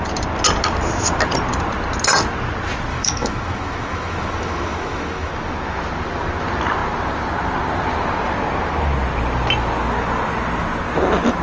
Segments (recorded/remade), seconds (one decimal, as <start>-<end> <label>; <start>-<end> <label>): 0.0-2.9 recorded; 2.9-5.3 remade; 5.3-11.4 recorded